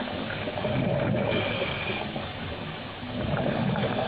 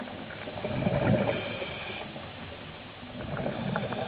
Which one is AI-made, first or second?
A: first